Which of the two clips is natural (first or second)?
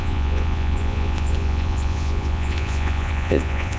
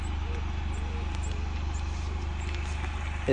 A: second